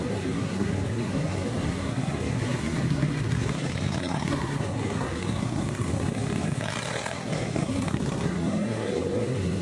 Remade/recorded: remade